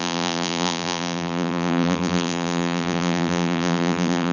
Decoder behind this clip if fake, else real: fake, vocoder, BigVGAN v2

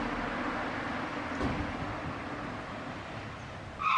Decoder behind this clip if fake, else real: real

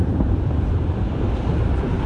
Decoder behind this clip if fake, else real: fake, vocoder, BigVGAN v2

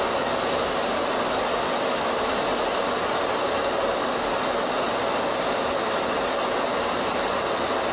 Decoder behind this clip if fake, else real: real